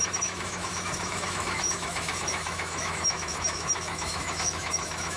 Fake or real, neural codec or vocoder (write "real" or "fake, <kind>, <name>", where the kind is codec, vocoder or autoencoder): fake, autoencoder, DAC-VAE